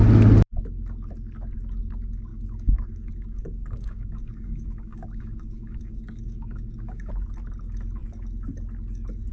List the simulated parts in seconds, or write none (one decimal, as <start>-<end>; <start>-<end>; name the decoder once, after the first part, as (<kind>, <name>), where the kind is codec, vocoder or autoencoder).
2.3-7.1 (codec, DAC)